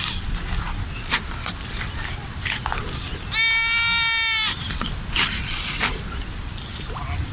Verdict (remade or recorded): recorded